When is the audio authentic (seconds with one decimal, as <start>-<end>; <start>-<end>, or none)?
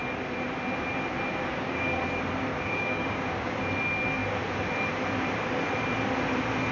0.0-1.5; 2.0-2.5; 3.6-6.7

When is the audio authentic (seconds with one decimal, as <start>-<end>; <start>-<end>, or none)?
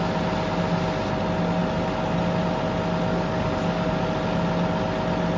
0.0-3.1; 3.9-5.4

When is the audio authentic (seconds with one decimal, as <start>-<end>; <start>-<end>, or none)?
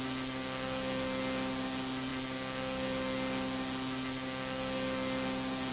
0.0-5.7